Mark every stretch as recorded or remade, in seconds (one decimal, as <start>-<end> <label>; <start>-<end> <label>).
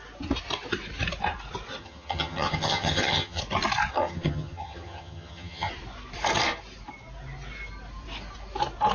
0.0-1.8 recorded; 1.8-3.4 remade; 3.4-3.9 recorded; 3.9-5.7 remade; 5.7-8.9 recorded